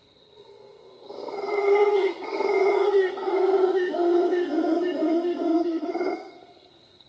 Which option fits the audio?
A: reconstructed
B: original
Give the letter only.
A